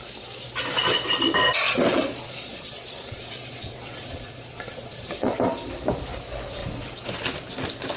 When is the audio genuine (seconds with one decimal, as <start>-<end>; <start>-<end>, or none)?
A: 0.0-1.9; 5.3-8.0